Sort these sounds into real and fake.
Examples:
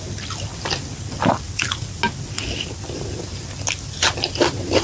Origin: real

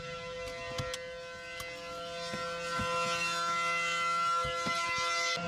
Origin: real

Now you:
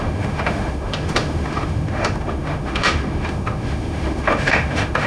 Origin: fake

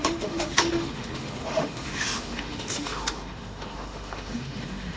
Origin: fake